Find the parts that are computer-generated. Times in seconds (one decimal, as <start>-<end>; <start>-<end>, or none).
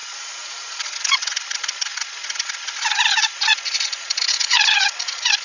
0.0-5.4